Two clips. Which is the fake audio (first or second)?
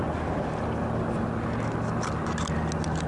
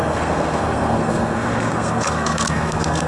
second